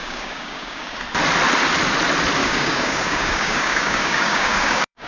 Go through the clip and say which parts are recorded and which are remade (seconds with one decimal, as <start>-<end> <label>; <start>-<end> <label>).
0.0-1.0 remade; 1.0-2.4 recorded; 2.4-5.1 remade